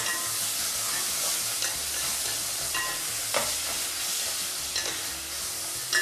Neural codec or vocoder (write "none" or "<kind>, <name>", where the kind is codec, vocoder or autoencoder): none